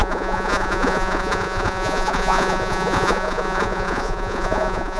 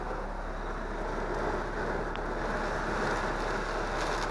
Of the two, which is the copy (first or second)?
first